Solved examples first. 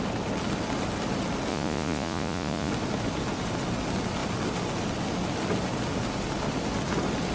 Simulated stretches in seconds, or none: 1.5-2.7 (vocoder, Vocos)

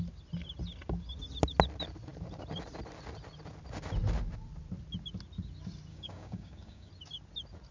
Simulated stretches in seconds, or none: 5.9-6.9 (codec, DAC)

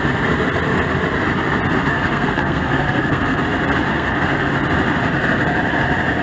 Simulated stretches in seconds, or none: 1.9-3.4 (codec, SNAC); 3.9-4.5

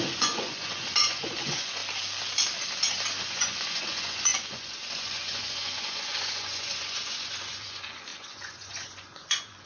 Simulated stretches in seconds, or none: 0.0-1.8 (vocoder, Vocos); 3.2-9.7

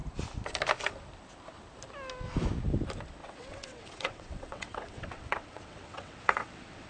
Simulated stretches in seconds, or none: 3.2-6.9 (vocoder, WaveNeXt)